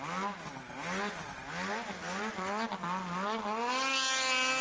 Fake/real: real